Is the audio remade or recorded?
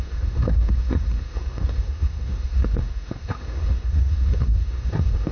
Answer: remade